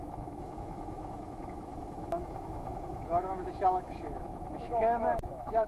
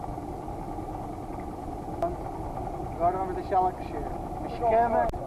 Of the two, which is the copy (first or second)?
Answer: first